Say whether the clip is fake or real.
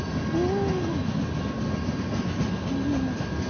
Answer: real